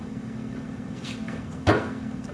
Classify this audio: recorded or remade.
remade